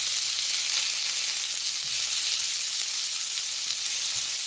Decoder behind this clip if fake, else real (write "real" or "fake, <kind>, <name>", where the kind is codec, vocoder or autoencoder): real